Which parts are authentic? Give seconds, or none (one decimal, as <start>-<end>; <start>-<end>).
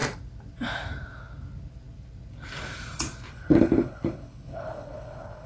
0.0-3.3